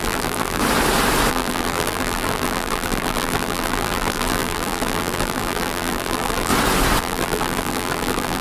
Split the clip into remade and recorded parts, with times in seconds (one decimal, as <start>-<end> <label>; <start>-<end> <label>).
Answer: 0.0-0.6 remade; 0.6-1.3 recorded; 1.3-6.5 remade; 6.5-7.0 recorded; 7.0-8.4 remade